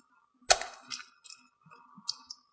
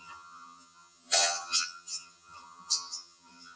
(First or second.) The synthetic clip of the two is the second